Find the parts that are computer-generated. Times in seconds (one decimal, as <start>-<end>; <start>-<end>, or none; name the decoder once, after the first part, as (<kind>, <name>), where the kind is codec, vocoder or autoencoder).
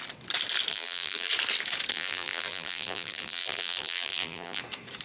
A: 0.7-1.3 (vocoder, BigVGAN v2); 1.9-4.6